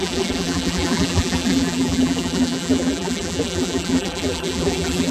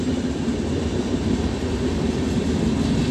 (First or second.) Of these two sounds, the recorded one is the second